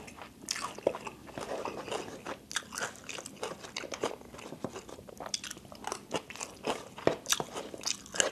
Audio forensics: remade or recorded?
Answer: recorded